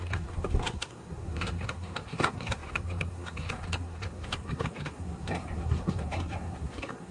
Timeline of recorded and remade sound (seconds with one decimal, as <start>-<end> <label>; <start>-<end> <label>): 0.0-7.1 remade